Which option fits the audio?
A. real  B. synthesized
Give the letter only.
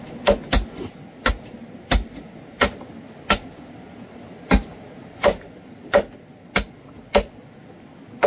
A